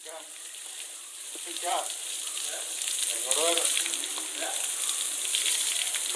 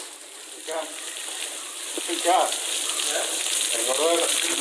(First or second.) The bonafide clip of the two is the second